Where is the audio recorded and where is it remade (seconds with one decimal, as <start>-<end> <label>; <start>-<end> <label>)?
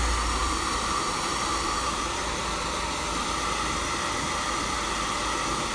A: 0.0-0.4 recorded; 0.4-1.4 remade; 1.4-5.7 recorded